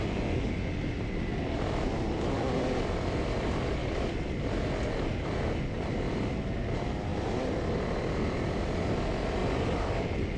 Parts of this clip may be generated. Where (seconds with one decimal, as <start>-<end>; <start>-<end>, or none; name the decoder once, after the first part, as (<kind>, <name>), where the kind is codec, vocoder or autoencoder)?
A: 1.3-3.4 (vocoder, BigVGAN v2); 3.8-4.6; 7.1-9.0; 9.4-9.9